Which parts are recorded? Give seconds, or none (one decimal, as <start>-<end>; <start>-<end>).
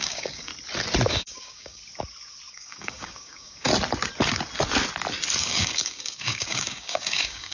0.5-1.1; 1.8-2.5; 3.7-5.4